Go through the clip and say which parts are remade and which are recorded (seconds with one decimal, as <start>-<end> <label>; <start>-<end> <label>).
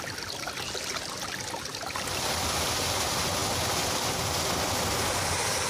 0.0-5.7 recorded